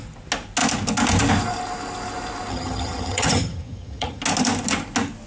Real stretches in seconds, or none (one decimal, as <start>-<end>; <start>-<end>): 0.0-2.5; 4.2-5.3